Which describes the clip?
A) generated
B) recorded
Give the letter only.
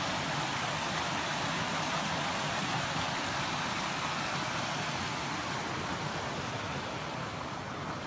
B